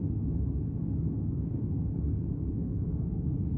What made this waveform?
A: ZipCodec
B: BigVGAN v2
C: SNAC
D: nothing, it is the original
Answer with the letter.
C